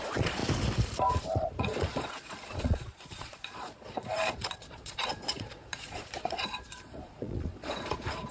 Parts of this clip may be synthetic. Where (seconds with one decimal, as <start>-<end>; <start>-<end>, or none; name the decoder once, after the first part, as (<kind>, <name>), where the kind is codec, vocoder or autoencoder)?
0.0-0.4 (vocoder, Vocos); 1.1-8.3